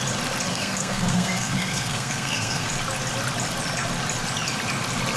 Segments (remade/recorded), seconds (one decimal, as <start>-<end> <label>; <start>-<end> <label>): 0.0-0.5 recorded; 0.5-2.7 remade; 2.7-5.2 recorded

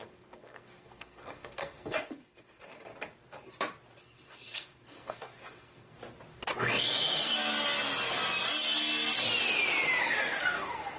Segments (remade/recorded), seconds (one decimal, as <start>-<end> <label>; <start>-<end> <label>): 0.0-2.9 remade; 2.9-4.0 recorded; 4.0-6.0 remade; 6.0-6.6 recorded; 6.6-7.3 remade; 7.3-10.0 recorded; 10.0-11.0 remade

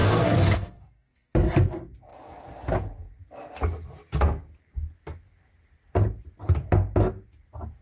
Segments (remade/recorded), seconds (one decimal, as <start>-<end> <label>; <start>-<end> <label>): 0.0-1.3 remade; 1.3-7.8 recorded

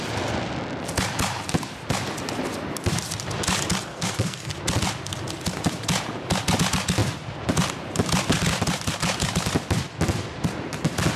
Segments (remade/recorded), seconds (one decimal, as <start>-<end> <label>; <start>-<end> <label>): 0.0-3.9 recorded; 3.9-4.5 remade; 4.5-11.2 recorded

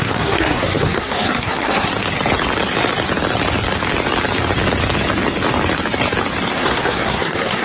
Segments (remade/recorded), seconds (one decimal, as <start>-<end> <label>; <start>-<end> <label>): 0.0-1.9 remade; 1.9-6.5 recorded; 6.5-7.6 remade

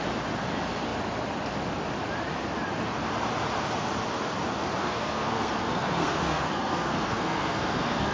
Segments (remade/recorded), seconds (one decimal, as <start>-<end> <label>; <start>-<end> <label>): 0.0-4.8 recorded; 4.8-8.1 remade